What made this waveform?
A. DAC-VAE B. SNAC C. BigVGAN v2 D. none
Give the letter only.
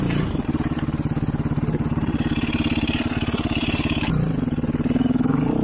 C